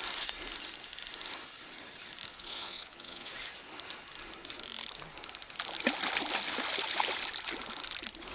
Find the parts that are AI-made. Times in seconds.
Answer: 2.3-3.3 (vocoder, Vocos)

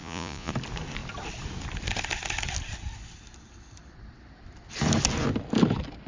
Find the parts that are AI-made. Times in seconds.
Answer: 0.0-0.5 (vocoder, Vocos)

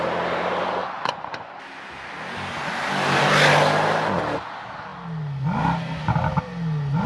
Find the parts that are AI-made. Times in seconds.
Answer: 0.8-1.5 (vocoder, Vocos)

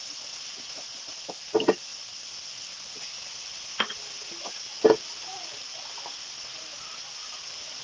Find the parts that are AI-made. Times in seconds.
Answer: none

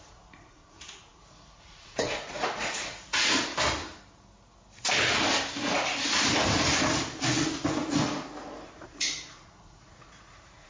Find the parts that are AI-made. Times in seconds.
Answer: 0.0-3.5 (vocoder, Vocos); 8.7-10.7

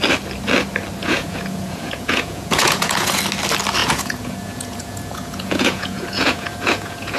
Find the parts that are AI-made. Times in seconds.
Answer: 1.0-3.2 (vocoder, Vocos); 3.8-7.2

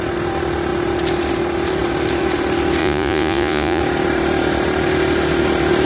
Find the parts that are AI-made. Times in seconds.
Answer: 2.8-3.8 (vocoder, Vocos)